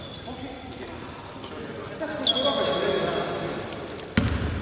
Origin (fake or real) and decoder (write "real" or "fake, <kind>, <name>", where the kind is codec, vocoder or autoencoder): real